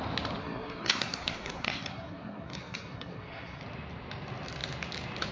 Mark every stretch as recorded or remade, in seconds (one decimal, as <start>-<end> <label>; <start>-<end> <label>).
0.0-0.4 recorded; 0.4-3.6 remade; 3.6-5.3 recorded